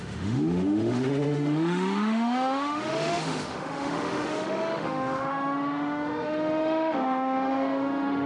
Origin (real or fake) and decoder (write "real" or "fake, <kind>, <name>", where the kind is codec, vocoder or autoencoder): fake, autoencoder, DAC-VAE